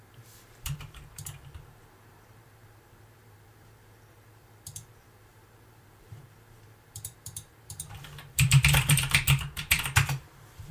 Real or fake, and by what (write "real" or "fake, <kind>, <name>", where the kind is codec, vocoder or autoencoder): fake, vocoder, BigVGAN v2